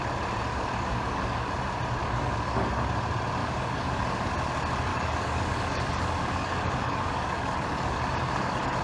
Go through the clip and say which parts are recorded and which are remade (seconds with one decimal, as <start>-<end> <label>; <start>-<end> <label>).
0.0-0.5 recorded; 0.5-1.5 remade; 1.5-2.0 recorded; 2.0-2.7 remade; 2.7-3.4 recorded; 3.4-4.3 remade; 4.3-4.9 recorded; 4.9-8.8 remade